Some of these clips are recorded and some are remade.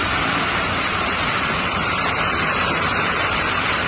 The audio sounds remade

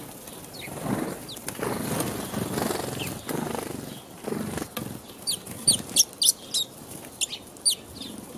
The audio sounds recorded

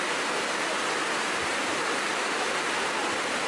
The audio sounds recorded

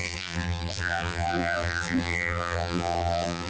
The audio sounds remade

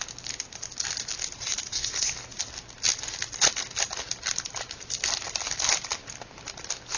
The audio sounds recorded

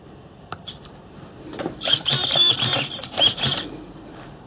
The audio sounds remade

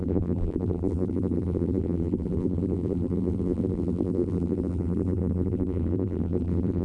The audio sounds remade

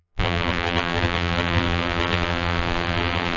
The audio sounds remade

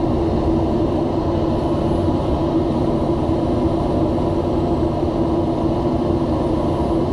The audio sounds recorded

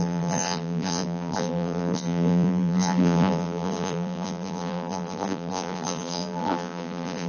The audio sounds remade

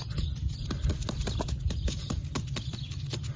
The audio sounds recorded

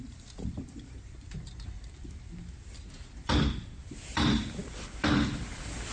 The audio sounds remade